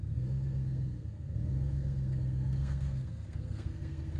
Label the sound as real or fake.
fake